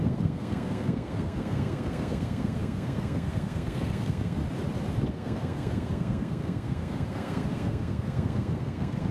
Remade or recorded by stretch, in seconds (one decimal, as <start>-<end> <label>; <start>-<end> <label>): 0.0-4.4 remade; 4.4-5.1 recorded; 5.1-9.1 remade